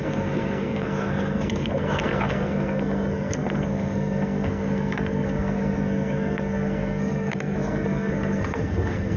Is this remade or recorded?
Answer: remade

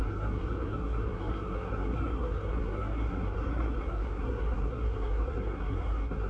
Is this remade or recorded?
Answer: remade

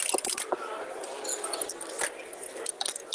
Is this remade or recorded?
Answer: recorded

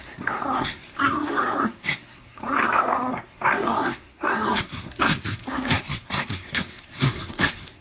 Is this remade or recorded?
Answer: remade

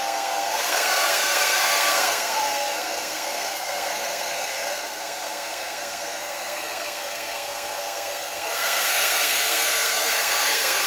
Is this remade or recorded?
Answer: remade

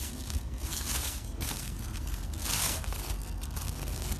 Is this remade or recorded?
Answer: remade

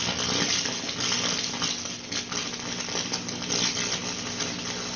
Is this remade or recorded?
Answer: recorded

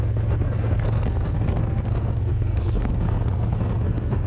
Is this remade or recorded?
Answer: remade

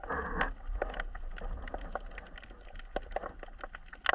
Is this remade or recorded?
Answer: recorded